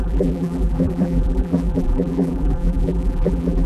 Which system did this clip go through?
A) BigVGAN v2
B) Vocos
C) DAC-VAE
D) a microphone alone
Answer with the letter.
A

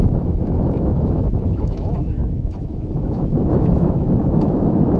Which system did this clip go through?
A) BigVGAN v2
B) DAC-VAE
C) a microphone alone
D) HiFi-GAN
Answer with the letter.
B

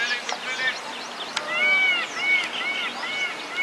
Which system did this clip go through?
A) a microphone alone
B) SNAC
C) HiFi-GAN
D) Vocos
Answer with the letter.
A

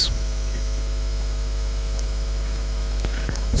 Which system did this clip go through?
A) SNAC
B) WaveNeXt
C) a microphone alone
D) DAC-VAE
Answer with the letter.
D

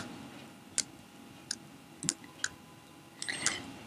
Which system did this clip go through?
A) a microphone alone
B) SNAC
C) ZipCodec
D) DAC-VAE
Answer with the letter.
A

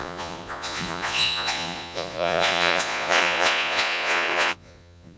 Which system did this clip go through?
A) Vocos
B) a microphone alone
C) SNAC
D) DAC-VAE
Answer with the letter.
A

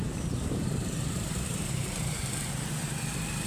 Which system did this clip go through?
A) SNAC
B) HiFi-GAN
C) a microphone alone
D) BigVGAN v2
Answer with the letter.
D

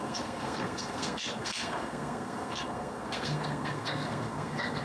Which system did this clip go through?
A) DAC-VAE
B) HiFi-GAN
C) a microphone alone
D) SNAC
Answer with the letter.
D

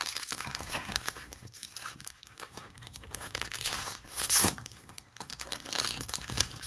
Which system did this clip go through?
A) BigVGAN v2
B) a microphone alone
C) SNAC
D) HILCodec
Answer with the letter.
C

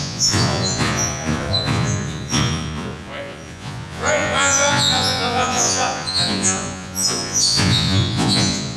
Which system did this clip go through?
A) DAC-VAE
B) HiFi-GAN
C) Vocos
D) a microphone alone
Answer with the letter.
C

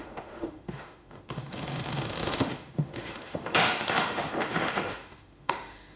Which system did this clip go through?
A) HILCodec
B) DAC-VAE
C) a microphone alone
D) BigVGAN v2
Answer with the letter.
B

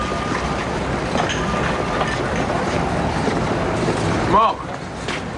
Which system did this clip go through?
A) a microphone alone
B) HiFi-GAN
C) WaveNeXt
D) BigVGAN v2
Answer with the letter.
A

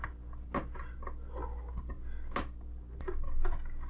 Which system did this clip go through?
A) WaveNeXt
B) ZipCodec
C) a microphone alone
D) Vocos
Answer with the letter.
C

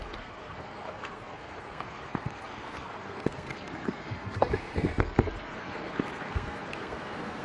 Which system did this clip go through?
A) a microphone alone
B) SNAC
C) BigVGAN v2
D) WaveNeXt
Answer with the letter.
B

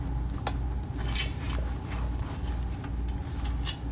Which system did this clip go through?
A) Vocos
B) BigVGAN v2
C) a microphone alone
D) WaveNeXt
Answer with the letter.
C